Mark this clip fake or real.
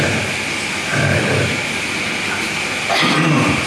real